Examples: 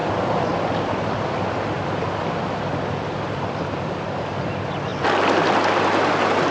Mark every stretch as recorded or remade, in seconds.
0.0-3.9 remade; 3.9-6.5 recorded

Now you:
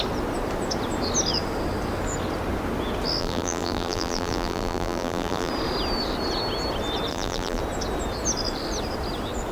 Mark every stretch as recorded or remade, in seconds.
0.0-3.2 recorded; 3.2-5.5 remade; 5.5-7.1 recorded; 7.1-7.6 remade; 7.6-9.5 recorded

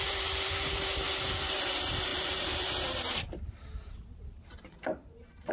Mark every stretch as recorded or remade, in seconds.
0.0-5.5 remade

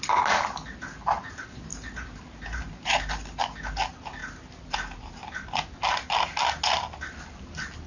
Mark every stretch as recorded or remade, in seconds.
0.0-1.7 recorded; 1.7-3.1 remade; 3.1-7.9 recorded